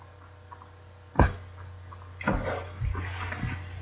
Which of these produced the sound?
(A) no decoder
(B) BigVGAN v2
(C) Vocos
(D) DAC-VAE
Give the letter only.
A